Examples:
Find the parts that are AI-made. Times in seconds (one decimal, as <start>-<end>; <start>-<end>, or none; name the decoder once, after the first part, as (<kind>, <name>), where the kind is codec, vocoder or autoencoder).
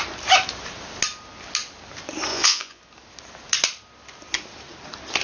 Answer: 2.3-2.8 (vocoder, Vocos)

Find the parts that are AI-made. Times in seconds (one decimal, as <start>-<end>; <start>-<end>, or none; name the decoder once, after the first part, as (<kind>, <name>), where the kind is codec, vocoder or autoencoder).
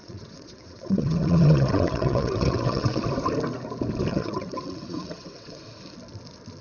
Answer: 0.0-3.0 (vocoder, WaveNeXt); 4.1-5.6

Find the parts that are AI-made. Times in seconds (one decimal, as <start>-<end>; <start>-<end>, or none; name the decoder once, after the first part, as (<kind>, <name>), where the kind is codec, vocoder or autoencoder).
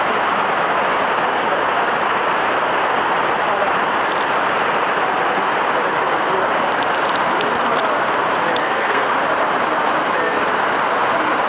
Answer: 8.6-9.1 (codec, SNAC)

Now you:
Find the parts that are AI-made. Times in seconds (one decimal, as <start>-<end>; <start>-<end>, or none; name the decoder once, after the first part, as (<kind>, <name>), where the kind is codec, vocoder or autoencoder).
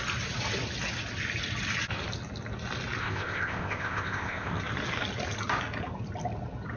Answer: 3.0-4.6 (codec, ZipCodec)